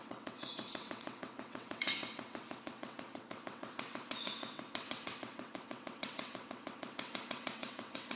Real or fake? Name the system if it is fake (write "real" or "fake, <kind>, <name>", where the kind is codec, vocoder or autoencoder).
fake, vocoder, WaveNeXt